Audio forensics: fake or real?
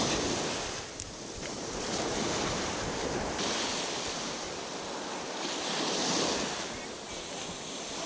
real